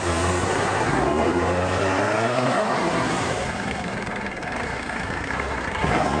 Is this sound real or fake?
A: fake